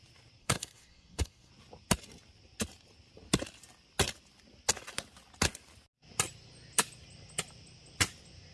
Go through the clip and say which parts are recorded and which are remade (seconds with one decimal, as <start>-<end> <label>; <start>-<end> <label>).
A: 0.0-0.4 recorded; 0.4-1.5 remade; 1.5-8.5 recorded